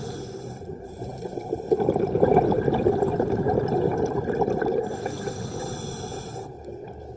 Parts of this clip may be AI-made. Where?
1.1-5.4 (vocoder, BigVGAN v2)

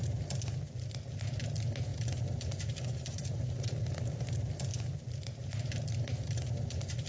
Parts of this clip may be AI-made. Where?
1.9-3.7 (vocoder, BigVGAN v2); 4.7-7.1

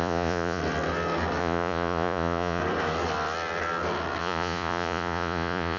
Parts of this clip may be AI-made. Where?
0.0-0.6 (vocoder, Vocos); 1.4-2.6; 4.2-5.8